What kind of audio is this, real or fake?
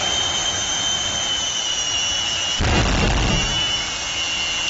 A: real